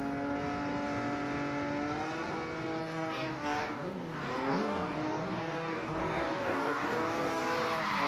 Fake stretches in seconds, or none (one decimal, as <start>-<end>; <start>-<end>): 2.8-7.4